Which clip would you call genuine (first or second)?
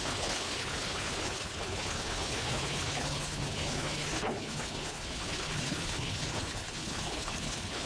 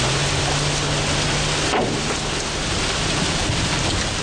second